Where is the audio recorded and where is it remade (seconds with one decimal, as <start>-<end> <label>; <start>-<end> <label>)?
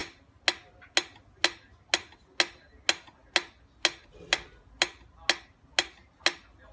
0.0-6.7 recorded